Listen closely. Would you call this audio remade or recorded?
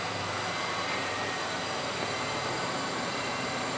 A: remade